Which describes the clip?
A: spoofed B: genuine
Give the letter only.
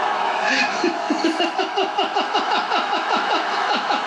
A